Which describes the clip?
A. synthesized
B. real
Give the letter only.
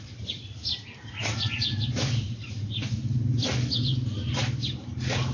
B